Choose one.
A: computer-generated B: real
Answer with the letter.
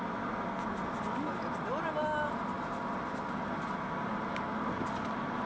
B